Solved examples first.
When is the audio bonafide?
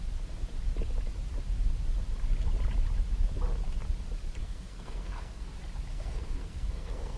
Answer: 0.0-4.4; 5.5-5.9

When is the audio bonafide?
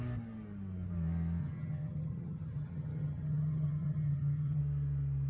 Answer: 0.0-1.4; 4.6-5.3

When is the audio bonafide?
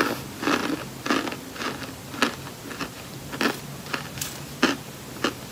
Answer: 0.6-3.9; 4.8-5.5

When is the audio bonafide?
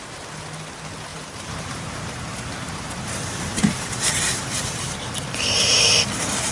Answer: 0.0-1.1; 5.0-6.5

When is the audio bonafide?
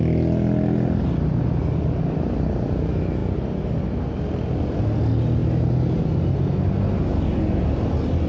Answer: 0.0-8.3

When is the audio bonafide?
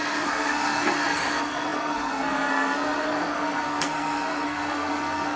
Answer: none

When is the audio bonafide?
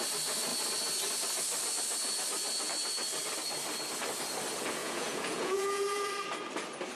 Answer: 0.0-4.8; 6.1-7.0